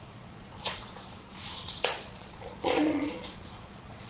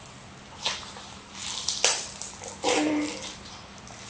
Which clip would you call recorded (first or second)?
second